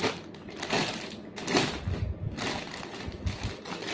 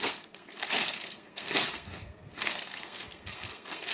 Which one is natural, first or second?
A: first